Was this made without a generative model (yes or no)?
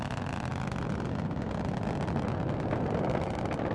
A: yes